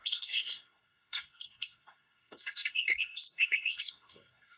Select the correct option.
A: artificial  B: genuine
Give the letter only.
A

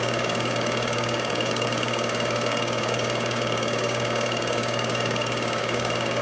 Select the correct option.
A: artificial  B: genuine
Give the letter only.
A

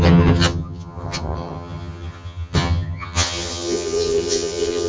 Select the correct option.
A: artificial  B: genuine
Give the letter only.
A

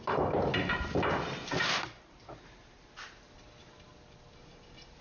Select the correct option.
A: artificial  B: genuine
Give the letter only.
B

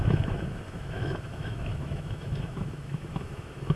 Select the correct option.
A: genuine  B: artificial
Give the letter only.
B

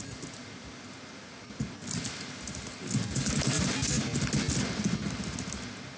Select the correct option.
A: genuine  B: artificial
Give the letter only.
A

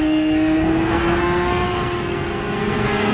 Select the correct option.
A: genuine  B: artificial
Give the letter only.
B